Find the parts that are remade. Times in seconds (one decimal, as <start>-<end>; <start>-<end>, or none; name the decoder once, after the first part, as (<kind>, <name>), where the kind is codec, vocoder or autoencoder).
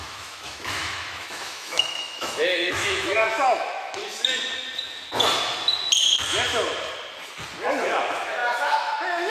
0.0-4.0 (autoencoder, DAC-VAE); 7.7-9.3